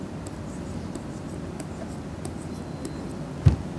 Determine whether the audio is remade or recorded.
recorded